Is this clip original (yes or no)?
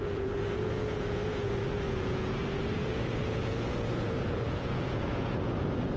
no